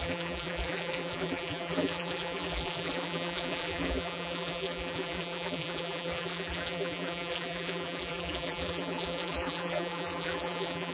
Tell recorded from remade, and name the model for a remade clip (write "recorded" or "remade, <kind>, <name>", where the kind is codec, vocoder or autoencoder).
remade, vocoder, BigVGAN v2